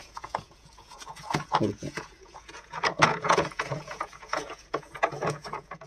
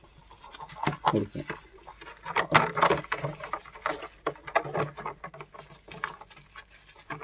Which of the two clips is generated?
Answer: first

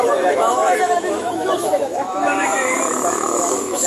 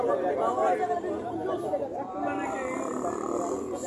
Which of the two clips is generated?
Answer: first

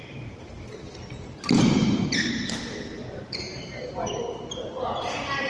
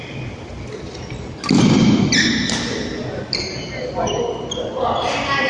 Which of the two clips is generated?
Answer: first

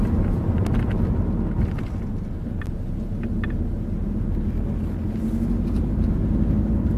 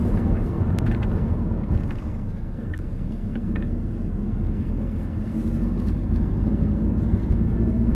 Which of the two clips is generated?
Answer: second